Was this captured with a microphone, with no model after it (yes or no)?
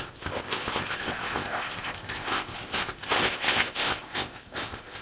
no